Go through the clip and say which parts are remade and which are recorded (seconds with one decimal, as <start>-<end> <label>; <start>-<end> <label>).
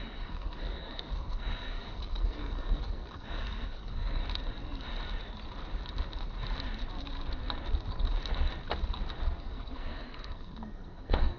0.0-4.2 remade; 4.2-9.4 recorded; 9.4-11.4 remade